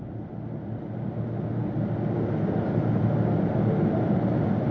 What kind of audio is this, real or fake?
real